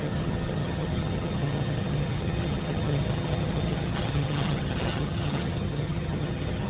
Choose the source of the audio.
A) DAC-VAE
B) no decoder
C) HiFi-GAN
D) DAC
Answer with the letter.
C